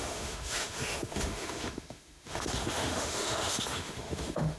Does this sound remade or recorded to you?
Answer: remade